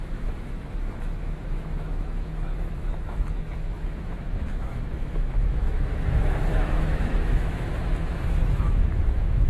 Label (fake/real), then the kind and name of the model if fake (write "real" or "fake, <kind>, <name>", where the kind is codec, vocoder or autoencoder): fake, autoencoder, DAC-VAE